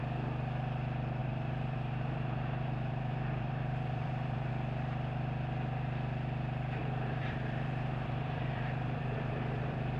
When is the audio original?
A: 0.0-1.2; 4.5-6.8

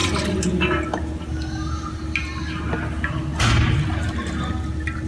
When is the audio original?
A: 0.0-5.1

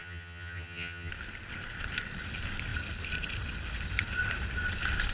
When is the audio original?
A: 1.1-5.1

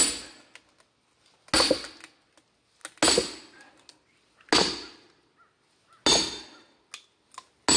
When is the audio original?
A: 0.0-7.8